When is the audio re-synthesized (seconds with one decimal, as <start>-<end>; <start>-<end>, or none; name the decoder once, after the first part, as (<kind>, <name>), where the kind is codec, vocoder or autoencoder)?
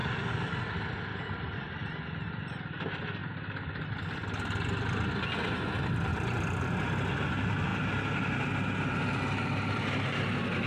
0.0-2.0 (vocoder, BigVGAN v2); 6.1-6.6